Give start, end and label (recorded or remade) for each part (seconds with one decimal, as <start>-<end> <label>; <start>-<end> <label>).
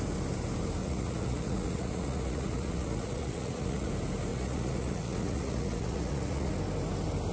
0.0-0.8 recorded; 0.8-3.9 remade; 3.9-4.3 recorded; 4.3-6.5 remade; 6.5-7.3 recorded